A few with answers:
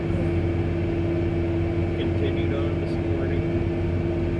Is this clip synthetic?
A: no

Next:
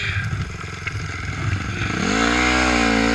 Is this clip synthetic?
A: no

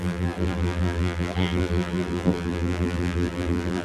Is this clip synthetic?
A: yes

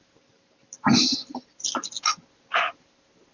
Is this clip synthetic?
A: no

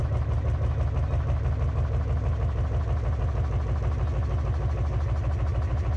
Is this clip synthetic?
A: no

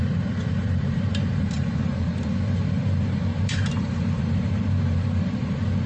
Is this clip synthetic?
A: yes